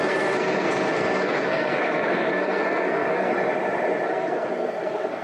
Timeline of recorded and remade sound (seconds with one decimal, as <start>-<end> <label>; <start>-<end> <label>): 0.0-3.3 remade; 3.3-4.1 recorded; 4.1-5.2 remade